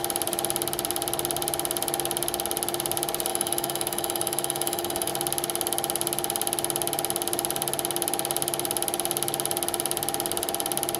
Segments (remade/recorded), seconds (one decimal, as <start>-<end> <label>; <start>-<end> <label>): 0.0-3.3 recorded; 3.3-5.1 remade; 5.1-11.0 recorded